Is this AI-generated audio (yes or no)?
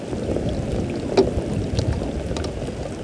no